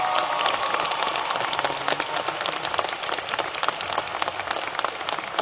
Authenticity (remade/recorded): recorded